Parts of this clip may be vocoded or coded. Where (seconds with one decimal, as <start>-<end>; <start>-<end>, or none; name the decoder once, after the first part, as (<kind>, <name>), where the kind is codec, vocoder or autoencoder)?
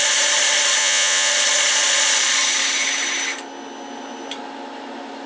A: 0.8-1.3 (vocoder, Vocos)